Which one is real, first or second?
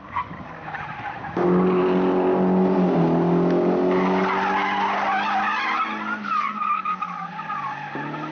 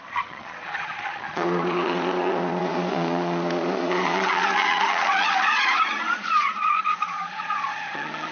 first